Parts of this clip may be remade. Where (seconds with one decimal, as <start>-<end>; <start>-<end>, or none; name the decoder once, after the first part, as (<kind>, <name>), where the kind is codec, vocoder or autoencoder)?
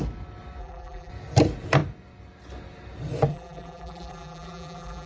0.6-1.1 (vocoder, BigVGAN v2); 3.3-5.1